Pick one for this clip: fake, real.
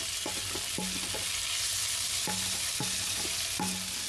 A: real